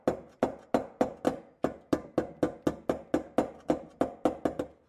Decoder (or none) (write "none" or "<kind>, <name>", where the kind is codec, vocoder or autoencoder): none